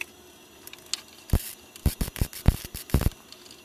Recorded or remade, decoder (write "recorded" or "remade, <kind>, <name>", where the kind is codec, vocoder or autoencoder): recorded